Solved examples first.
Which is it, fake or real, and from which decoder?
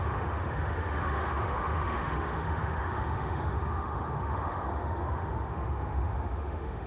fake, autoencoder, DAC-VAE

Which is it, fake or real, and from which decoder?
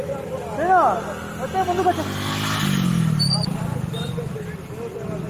real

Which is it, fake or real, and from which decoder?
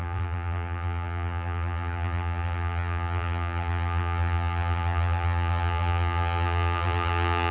fake, vocoder, BigVGAN v2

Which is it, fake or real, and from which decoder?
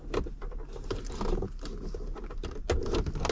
real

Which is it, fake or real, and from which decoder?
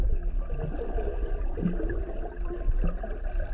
fake, vocoder, BigVGAN v2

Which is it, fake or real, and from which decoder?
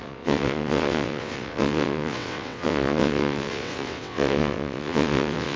fake, vocoder, WaveNeXt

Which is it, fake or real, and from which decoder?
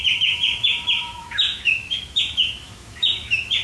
fake, autoencoder, DAC-VAE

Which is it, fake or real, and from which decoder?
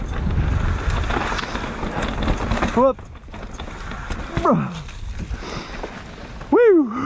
real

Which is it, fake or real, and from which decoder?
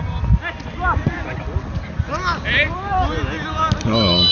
real